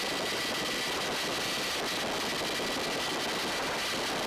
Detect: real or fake real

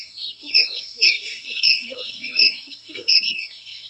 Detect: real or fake fake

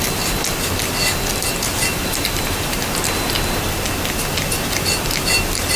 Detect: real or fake real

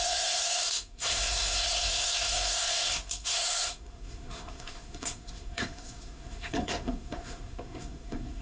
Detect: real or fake fake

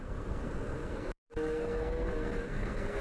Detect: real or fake fake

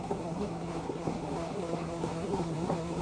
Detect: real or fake fake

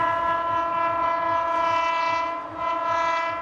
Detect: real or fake real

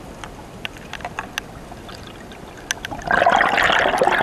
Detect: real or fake real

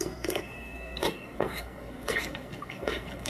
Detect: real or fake fake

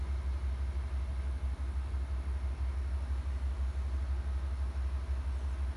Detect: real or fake real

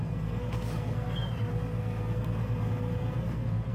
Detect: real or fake fake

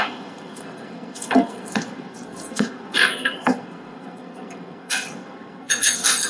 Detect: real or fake fake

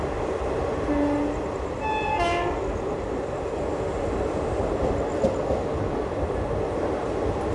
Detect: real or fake real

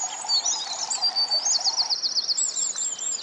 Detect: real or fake real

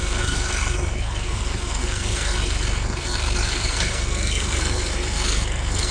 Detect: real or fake fake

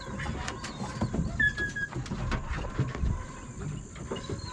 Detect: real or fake real